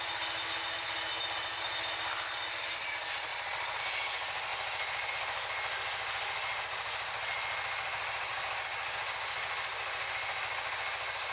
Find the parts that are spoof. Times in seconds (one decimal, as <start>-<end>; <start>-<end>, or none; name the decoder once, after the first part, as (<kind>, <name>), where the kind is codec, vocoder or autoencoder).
3.3-3.8 (vocoder, Vocos)